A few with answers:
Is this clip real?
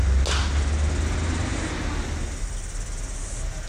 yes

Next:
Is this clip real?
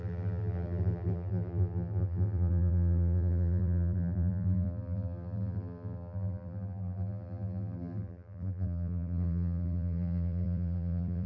no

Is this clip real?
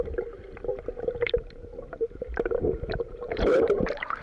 no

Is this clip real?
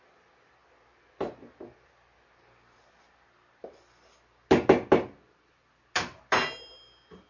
yes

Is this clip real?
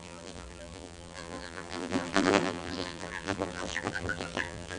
no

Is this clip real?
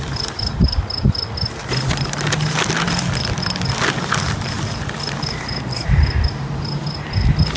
yes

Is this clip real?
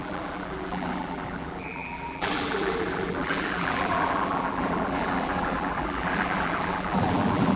no